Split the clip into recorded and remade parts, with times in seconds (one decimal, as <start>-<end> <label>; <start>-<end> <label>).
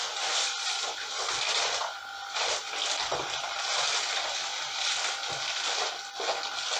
0.0-6.8 recorded